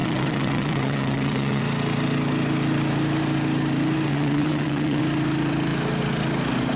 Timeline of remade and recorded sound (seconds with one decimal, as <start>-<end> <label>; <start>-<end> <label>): 0.0-1.6 remade; 1.6-4.1 recorded; 4.1-5.0 remade; 5.0-6.8 recorded